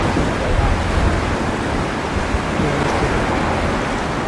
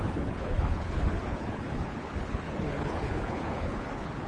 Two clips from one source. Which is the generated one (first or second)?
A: second